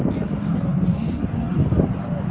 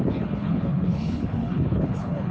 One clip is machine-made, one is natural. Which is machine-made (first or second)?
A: second